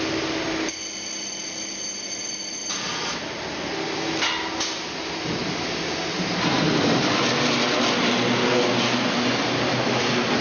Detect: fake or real real